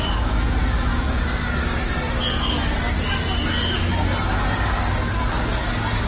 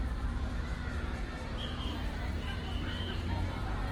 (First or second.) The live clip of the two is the first